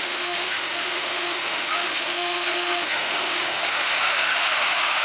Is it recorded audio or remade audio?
remade